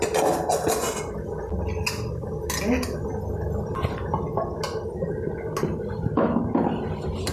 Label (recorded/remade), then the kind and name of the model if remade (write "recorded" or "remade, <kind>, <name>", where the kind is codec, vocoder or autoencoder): recorded